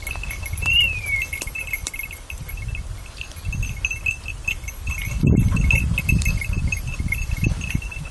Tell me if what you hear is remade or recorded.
remade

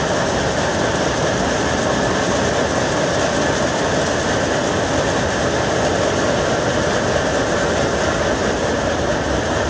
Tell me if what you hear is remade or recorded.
recorded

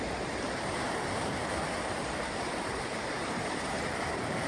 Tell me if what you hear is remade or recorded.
remade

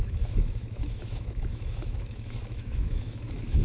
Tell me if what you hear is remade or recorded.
remade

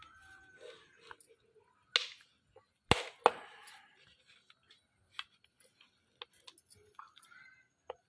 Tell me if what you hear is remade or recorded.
recorded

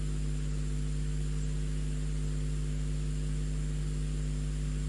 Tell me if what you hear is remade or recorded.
recorded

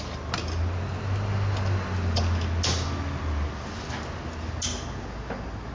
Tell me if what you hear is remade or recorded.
recorded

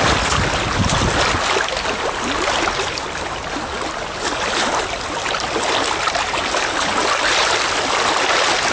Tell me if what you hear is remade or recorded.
recorded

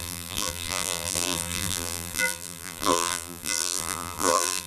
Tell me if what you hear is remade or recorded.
remade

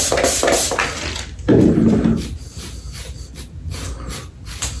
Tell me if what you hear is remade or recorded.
recorded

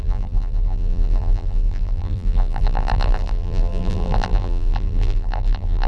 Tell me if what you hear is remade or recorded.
remade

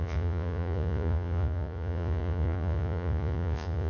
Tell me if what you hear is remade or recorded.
remade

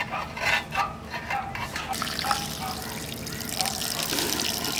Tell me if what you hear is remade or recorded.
recorded